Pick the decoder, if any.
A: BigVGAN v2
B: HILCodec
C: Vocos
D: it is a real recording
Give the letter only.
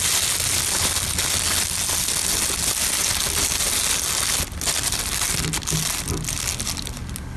D